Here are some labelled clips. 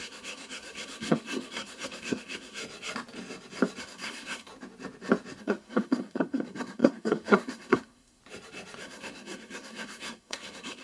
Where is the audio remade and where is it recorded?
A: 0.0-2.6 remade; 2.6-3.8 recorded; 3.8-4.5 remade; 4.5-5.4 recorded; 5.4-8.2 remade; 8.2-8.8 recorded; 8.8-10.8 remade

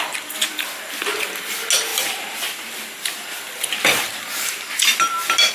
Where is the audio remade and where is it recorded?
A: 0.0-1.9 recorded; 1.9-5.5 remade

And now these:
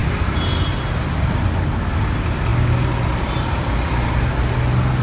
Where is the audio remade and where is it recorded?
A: 0.0-5.0 recorded